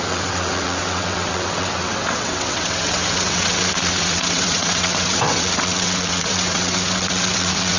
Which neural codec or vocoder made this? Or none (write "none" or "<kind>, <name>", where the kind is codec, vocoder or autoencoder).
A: vocoder, WaveNeXt